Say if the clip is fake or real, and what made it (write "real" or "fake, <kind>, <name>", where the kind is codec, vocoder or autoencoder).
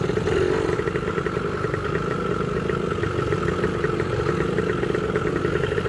real